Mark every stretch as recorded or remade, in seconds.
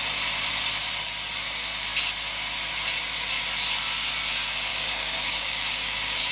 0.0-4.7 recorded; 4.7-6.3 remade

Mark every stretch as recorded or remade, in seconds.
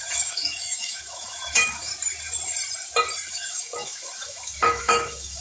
0.0-1.9 remade; 1.9-3.3 recorded; 3.3-5.4 remade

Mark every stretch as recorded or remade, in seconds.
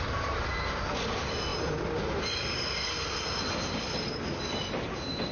0.0-5.3 recorded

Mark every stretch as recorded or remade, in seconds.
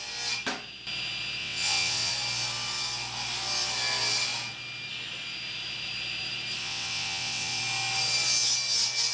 0.0-1.4 recorded; 1.4-2.1 remade; 2.1-6.6 recorded; 6.6-7.6 remade; 7.6-9.1 recorded